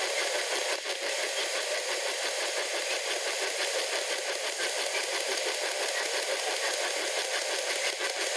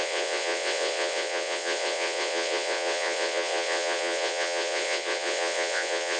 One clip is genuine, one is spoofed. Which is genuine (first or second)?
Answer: first